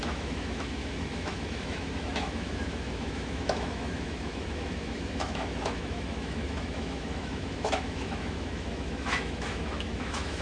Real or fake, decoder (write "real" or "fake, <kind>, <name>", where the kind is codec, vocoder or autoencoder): fake, autoencoder, DAC-VAE